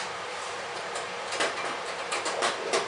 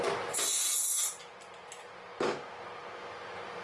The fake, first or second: first